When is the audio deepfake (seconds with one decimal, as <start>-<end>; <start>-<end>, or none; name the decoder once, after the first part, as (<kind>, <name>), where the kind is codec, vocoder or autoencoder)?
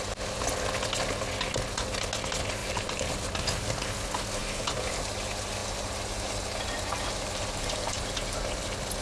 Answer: 2.6-3.2 (vocoder, BigVGAN v2); 4.4-5.0; 5.6-8.5